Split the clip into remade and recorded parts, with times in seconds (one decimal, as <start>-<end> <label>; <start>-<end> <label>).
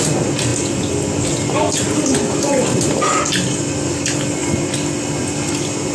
0.0-5.9 recorded